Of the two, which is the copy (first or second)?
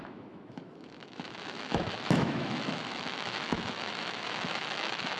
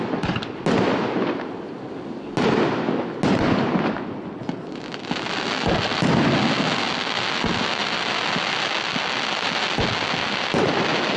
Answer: first